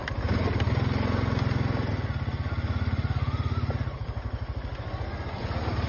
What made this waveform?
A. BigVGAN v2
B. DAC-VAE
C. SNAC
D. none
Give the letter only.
D